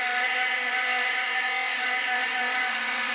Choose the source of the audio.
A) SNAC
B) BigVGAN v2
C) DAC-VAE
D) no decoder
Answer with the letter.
C